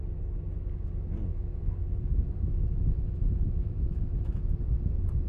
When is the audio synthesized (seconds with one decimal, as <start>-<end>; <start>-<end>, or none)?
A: 1.3-4.5